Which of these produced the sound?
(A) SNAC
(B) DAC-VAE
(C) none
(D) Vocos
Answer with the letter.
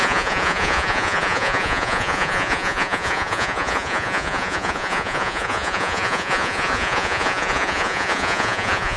D